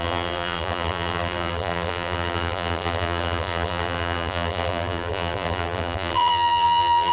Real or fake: fake